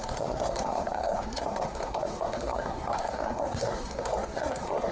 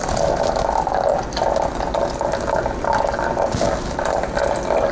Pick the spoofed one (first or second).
first